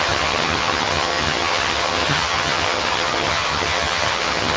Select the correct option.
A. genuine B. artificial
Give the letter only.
B